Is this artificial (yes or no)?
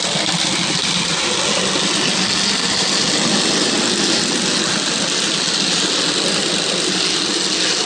no